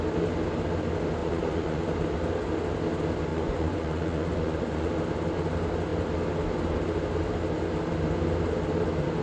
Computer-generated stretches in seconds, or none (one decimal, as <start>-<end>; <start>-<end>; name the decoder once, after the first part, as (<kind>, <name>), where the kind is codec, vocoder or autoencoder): 1.2-1.8 (vocoder, Vocos); 3.3-4.9